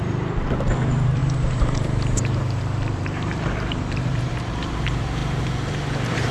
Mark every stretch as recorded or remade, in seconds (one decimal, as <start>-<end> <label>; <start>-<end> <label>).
0.0-6.3 remade